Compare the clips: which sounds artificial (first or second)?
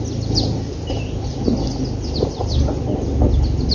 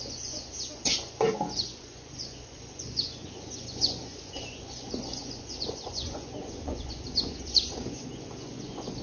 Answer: second